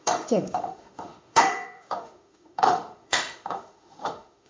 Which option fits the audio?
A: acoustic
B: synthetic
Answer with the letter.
B